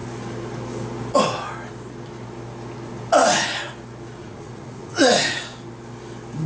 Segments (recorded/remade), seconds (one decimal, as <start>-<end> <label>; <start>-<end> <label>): 0.0-3.2 recorded; 3.2-3.7 remade; 3.7-4.2 recorded; 4.2-5.4 remade; 5.4-6.5 recorded